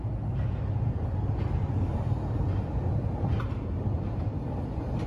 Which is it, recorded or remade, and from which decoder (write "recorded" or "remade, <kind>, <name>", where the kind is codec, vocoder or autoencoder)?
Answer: recorded